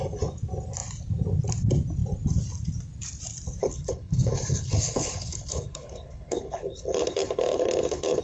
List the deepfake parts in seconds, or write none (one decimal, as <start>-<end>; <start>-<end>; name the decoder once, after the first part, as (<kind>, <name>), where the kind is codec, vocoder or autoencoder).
3.6-8.2 (codec, HILCodec)